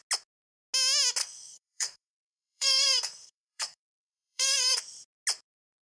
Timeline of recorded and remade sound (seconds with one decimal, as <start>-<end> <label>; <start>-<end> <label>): 0.0-1.2 recorded; 1.2-4.8 remade; 4.8-6.0 recorded